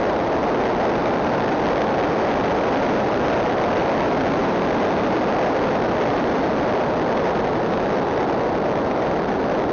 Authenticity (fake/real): real